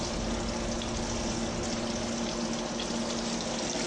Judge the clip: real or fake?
real